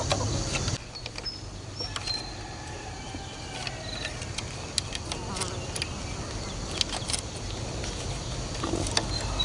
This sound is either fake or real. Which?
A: real